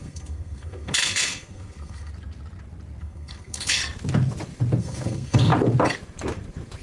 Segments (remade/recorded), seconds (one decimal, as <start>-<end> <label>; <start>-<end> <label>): 0.0-2.1 remade; 2.1-3.0 recorded; 3.0-3.8 remade; 3.8-4.8 recorded; 4.8-5.5 remade; 5.5-6.8 recorded